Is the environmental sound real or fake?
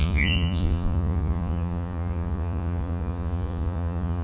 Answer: fake